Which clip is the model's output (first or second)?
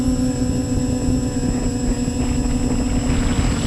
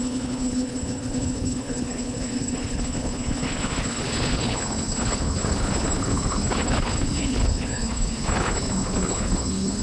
second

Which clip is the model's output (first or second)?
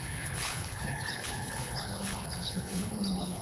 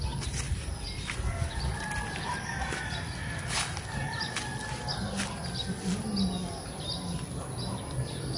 first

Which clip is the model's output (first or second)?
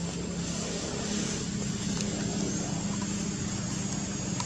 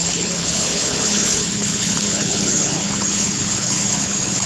second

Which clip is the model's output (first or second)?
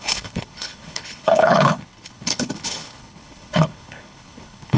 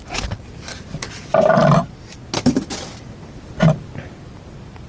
first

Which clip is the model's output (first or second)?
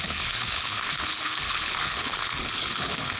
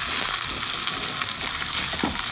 first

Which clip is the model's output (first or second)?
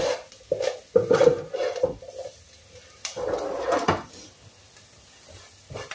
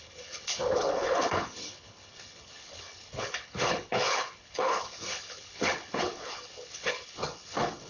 second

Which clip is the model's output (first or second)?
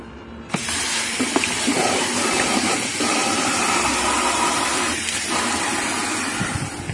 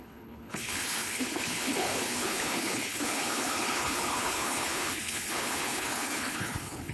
second